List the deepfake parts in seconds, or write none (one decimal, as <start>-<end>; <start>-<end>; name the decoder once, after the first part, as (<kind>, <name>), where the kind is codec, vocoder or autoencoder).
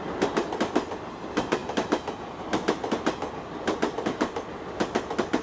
none